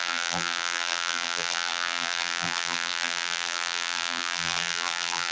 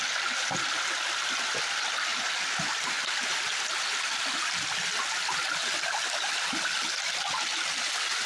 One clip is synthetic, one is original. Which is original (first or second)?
second